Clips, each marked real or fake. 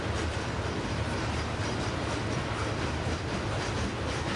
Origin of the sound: fake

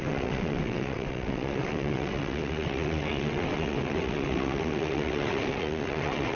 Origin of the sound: fake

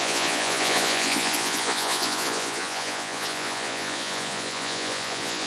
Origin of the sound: fake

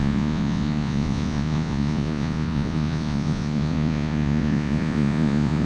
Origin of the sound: fake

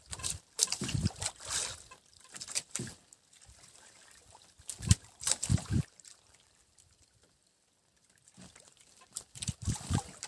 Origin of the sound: fake